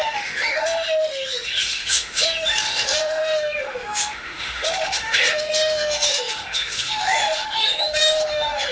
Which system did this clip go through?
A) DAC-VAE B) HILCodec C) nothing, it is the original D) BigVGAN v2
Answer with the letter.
A